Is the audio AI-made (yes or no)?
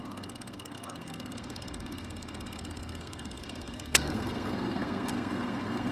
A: yes